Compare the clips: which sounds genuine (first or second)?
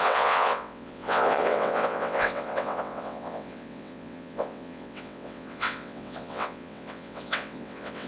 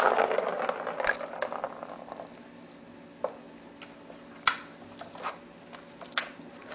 second